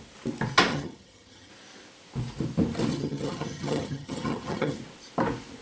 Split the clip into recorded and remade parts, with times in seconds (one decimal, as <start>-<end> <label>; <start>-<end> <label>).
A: 0.0-0.7 recorded; 0.7-1.5 remade; 1.5-2.9 recorded; 2.9-4.8 remade; 4.8-5.6 recorded